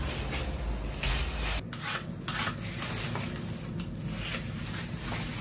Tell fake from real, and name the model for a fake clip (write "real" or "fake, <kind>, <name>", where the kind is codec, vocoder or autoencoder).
real